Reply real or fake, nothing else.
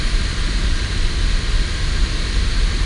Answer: real